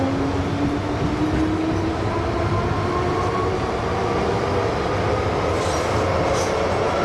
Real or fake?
real